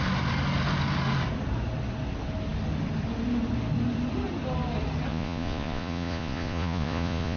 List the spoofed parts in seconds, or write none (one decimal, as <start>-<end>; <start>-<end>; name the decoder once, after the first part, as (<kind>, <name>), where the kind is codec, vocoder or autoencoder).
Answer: 5.1-7.4 (vocoder, Vocos)